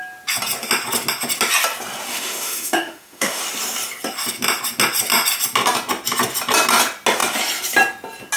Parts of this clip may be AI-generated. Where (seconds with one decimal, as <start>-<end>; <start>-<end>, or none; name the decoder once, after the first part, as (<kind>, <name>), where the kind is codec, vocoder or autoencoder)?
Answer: 2.1-3.4 (autoencoder, DAC-VAE)